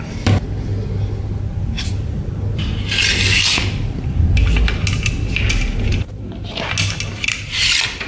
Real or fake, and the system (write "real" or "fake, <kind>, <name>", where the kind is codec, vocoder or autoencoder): real